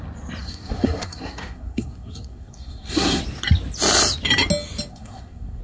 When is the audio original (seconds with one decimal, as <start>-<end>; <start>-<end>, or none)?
0.0-0.4; 3.2-4.9